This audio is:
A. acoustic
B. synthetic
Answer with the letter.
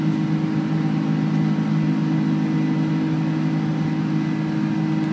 A